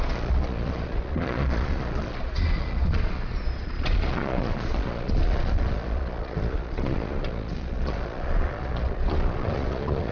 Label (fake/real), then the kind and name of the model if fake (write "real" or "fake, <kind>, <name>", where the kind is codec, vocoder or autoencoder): fake, vocoder, Vocos